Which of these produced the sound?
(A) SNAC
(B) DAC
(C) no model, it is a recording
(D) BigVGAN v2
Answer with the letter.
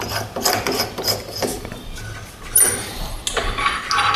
C